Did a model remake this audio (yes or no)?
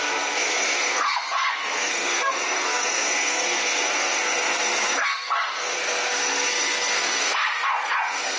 yes